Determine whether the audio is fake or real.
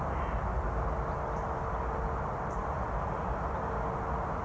real